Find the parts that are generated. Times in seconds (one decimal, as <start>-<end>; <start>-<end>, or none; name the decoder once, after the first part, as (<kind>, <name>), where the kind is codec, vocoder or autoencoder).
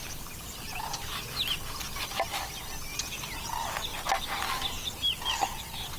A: 2.9-3.5 (vocoder, BigVGAN v2)